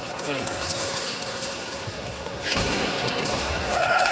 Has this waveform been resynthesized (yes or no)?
yes